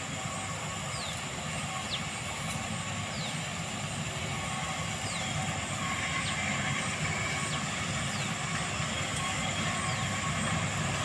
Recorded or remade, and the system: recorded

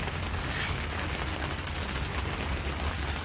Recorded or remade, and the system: recorded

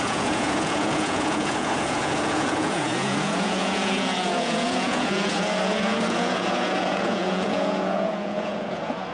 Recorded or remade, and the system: remade, vocoder, Vocos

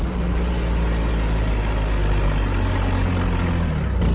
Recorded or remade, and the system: recorded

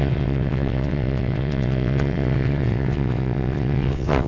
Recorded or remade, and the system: remade, vocoder, WaveNeXt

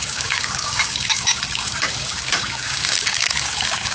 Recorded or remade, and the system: remade, codec, DAC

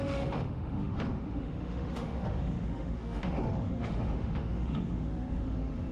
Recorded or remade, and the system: remade, autoencoder, DAC-VAE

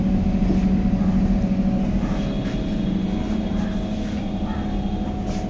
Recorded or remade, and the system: recorded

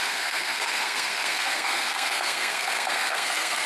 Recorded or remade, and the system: remade, codec, SNAC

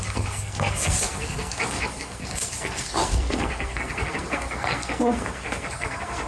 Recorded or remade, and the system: remade, codec, SNAC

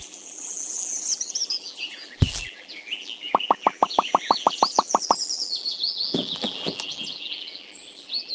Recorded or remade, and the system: remade, vocoder, BigVGAN v2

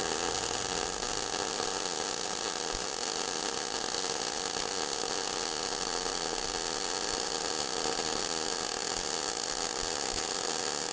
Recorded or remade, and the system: recorded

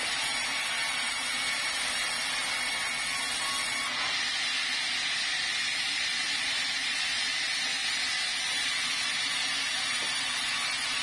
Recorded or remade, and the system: recorded